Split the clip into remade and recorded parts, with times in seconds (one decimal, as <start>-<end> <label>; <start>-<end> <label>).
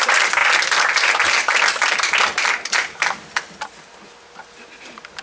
0.0-5.2 recorded